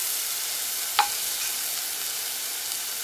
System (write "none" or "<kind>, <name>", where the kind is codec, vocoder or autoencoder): none